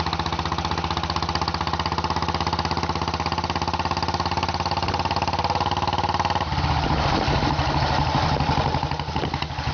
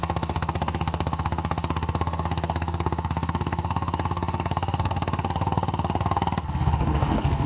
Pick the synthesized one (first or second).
second